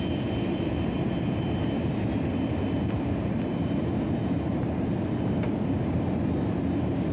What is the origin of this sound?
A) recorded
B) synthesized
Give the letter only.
B